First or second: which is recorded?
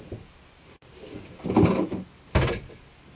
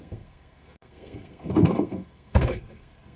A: first